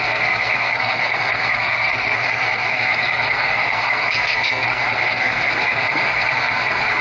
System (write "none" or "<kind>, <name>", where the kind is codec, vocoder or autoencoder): codec, SNAC